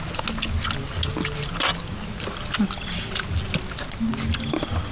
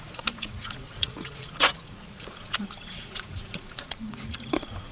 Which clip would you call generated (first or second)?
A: second